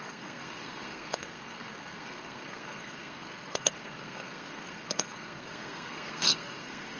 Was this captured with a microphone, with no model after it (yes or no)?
no